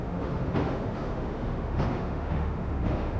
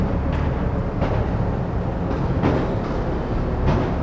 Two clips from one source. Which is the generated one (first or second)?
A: first